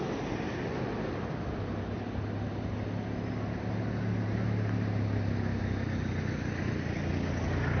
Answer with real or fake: real